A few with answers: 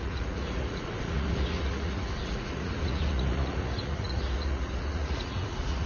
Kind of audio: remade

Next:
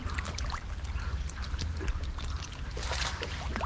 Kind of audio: recorded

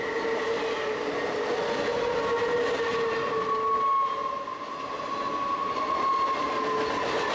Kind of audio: recorded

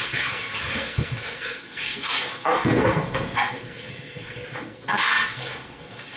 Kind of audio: remade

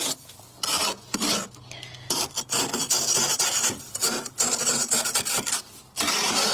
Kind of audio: recorded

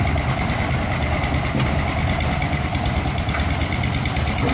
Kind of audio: recorded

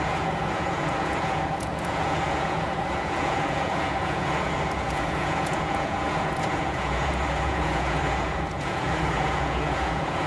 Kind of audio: remade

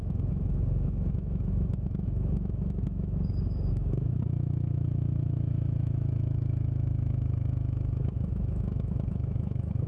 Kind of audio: remade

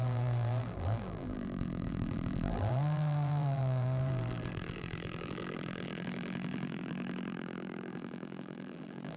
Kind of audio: remade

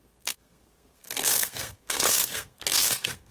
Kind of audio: remade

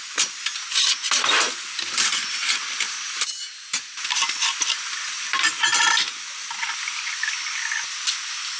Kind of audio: recorded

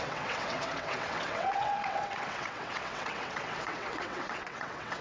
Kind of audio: remade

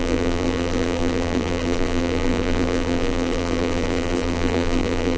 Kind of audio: remade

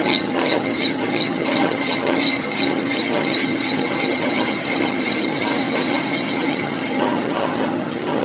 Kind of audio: remade